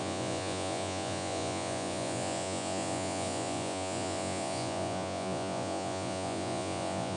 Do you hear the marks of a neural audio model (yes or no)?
yes